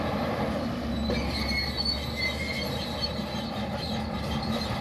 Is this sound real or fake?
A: real